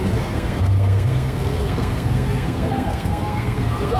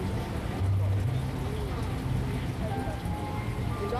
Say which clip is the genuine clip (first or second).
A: second